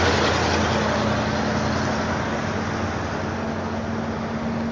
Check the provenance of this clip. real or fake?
real